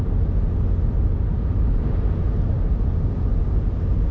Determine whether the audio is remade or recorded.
recorded